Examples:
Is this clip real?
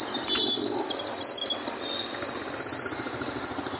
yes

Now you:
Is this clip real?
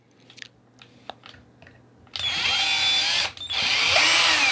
yes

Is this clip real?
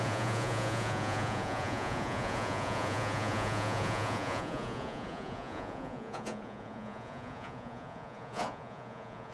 no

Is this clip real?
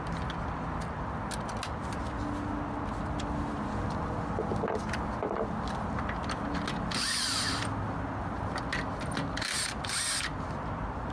yes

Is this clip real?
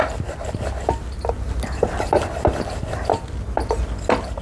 yes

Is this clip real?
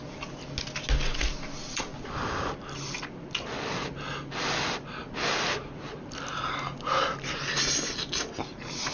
yes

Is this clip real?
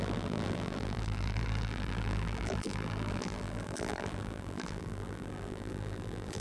no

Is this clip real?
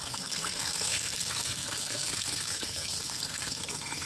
no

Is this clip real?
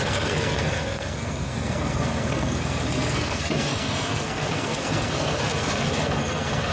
no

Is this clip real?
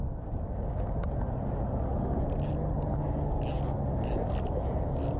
yes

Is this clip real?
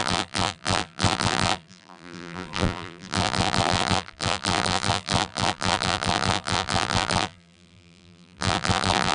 no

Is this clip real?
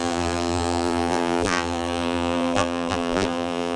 no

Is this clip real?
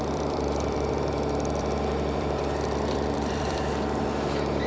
no